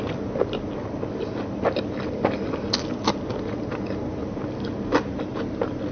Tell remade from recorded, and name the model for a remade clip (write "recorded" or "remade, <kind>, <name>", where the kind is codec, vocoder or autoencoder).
recorded